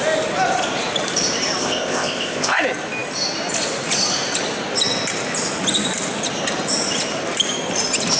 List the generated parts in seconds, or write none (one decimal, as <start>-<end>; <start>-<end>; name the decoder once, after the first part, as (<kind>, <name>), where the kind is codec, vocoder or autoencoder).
1.6-2.6 (codec, ZipCodec)